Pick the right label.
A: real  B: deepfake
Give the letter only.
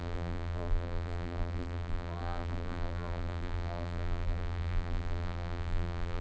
B